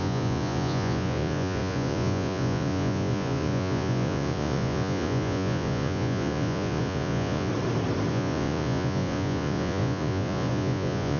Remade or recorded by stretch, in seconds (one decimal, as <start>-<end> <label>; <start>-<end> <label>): 0.0-7.5 remade; 7.5-8.1 recorded; 8.1-11.2 remade